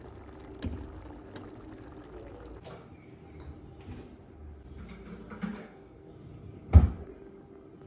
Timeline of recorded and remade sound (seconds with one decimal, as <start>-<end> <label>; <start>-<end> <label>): 0.0-5.6 recorded; 5.6-6.1 remade; 6.1-7.9 recorded